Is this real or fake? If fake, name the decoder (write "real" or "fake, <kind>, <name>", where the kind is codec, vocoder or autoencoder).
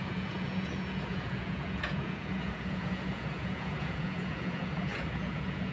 fake, vocoder, Vocos